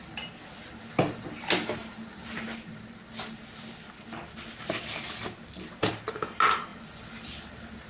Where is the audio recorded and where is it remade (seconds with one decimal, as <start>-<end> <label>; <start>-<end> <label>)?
0.0-7.9 recorded